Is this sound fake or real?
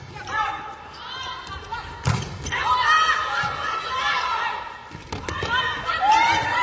real